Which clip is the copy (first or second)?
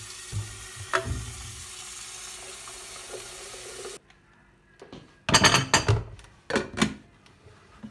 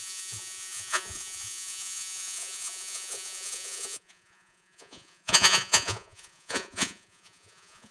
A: second